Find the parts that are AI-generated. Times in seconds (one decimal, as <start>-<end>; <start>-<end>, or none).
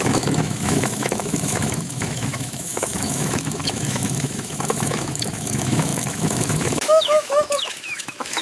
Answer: 0.0-8.4